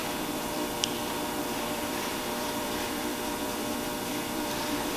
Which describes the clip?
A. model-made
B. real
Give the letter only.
A